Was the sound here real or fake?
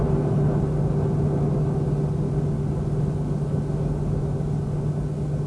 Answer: real